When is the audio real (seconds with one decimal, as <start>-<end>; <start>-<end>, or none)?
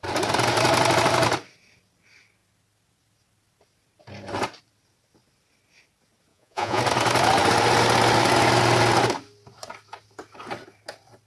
0.0-6.3; 6.8-11.3